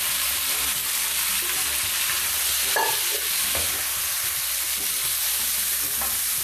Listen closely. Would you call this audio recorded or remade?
remade